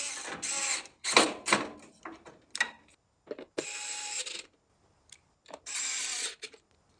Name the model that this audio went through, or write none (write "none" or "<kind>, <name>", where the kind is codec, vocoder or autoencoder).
none